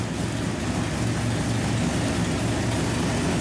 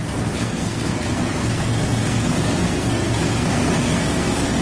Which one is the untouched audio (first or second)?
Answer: first